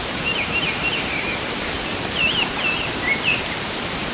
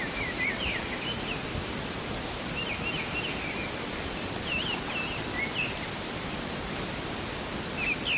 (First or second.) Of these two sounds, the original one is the second